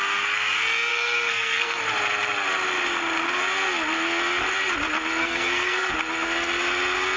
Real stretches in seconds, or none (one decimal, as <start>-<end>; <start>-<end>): 0.0-0.9; 1.8-5.2; 5.9-7.2

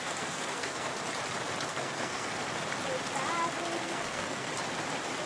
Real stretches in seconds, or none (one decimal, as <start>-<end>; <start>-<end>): 0.9-1.7; 2.4-3.7; 4.5-5.3

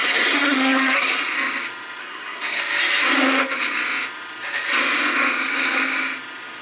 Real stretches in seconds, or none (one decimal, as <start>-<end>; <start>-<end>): 1.2-2.0; 2.6-6.6

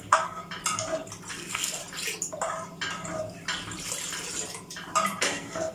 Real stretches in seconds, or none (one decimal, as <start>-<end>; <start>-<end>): 0.4-1.3; 1.8-5.2

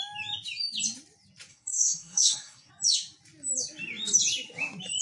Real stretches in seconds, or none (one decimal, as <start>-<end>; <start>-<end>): 0.0-1.5; 2.7-5.0

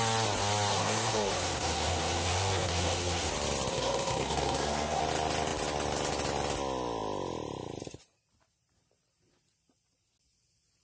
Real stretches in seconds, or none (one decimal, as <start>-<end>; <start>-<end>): 0.0-0.7; 3.3-3.7; 5.0-10.8

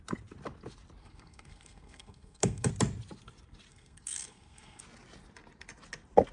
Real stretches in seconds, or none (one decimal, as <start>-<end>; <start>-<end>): 0.0-1.0; 2.7-3.7; 4.8-6.3